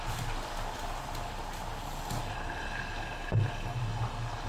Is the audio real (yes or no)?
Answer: yes